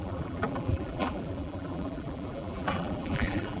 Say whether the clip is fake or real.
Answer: fake